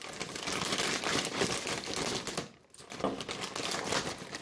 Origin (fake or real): real